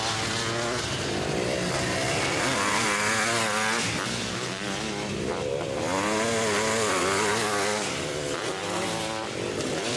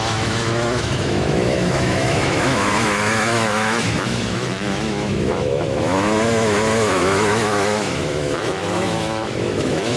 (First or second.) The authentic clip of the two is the first